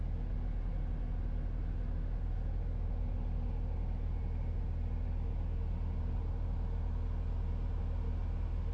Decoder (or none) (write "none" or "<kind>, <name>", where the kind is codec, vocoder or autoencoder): none